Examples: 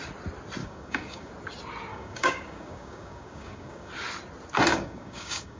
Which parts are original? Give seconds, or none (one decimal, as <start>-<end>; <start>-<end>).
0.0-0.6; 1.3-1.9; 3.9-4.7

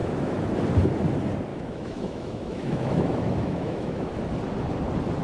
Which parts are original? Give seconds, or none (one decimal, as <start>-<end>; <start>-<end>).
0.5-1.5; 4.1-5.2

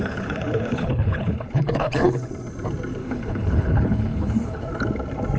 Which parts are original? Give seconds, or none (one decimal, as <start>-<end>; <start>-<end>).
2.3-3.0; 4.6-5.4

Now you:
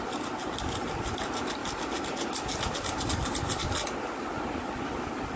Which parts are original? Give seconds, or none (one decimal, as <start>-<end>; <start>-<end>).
0.0-5.4

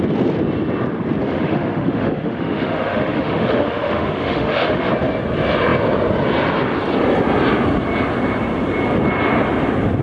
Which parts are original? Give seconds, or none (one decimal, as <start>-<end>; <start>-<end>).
0.0-1.2; 4.9-10.0